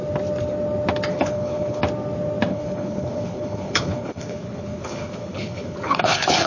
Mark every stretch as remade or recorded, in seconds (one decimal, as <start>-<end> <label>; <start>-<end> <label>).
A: 0.0-1.1 recorded; 1.1-1.8 remade; 1.8-2.5 recorded; 2.5-6.5 remade